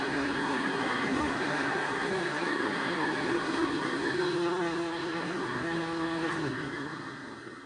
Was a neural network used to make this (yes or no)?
yes